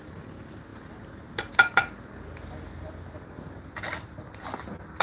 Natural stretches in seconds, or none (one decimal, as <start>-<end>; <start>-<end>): 0.0-5.0

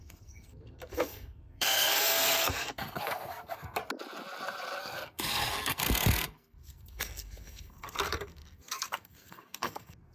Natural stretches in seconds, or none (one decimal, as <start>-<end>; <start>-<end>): 3.8-4.8

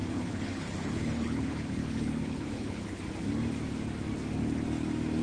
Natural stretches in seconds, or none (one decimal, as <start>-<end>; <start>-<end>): 3.1-5.2

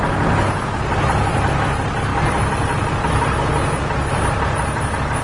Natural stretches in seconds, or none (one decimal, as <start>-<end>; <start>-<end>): 0.0-5.2

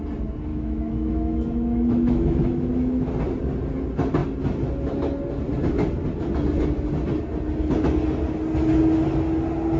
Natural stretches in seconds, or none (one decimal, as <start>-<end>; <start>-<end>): 0.0-0.5; 3.1-9.8

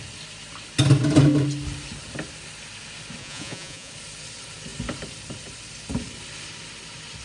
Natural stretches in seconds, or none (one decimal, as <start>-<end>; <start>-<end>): 0.0-3.2; 3.9-7.2